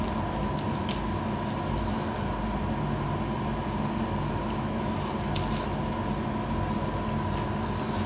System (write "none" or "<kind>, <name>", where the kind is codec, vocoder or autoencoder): none